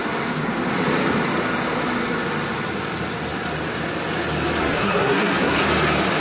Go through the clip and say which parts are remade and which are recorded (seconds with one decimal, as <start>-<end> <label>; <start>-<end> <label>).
0.0-4.6 recorded; 4.6-5.6 remade; 5.6-6.2 recorded